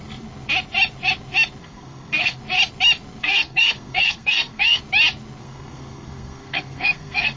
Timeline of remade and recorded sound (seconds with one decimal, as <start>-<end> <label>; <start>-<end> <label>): 0.0-1.6 recorded; 1.6-2.4 remade; 2.4-3.2 recorded; 3.2-4.8 remade; 4.8-5.4 recorded; 5.4-7.4 remade